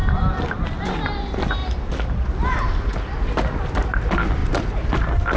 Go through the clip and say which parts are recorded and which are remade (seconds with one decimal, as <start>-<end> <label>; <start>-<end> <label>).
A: 0.0-1.6 remade; 1.6-4.0 recorded; 4.0-5.4 remade